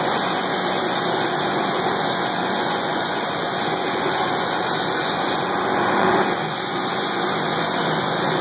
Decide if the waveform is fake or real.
fake